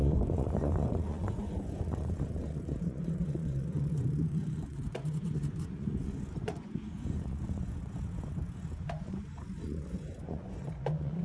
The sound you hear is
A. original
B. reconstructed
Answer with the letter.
B